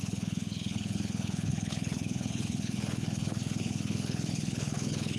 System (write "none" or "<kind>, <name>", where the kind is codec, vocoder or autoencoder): codec, HILCodec